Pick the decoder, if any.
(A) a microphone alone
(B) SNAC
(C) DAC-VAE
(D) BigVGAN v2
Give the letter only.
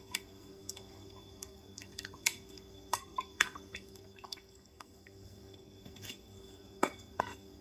B